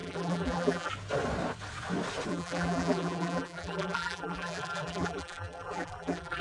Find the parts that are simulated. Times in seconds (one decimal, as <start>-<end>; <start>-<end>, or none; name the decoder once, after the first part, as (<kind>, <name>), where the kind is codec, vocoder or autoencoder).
0.0-0.9 (vocoder, BigVGAN v2); 2.3-6.4